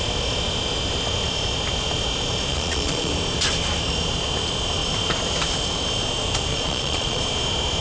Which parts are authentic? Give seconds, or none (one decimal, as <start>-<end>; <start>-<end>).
0.0-2.5; 3.1-6.5; 7.2-7.8